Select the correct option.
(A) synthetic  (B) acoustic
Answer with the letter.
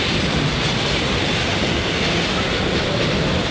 B